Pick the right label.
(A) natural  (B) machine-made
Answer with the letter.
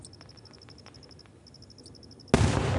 A